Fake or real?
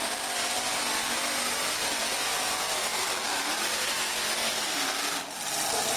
real